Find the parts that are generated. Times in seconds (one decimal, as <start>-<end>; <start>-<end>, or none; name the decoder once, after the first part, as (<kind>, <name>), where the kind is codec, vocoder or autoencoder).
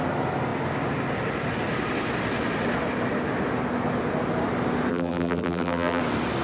4.9-6.0 (vocoder, BigVGAN v2)